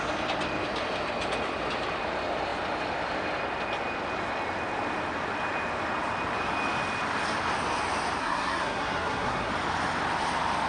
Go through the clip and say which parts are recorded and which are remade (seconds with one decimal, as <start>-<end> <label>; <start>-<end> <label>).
0.0-8.2 recorded; 8.2-9.5 remade; 9.5-10.7 recorded